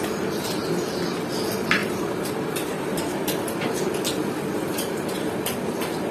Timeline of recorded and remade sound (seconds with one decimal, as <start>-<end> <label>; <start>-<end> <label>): 0.0-1.8 recorded; 1.8-3.0 remade; 3.0-4.6 recorded; 4.6-5.3 remade; 5.3-6.1 recorded